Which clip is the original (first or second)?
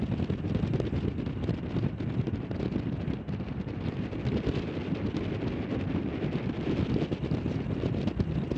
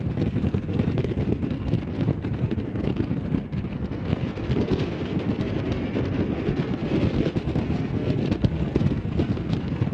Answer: first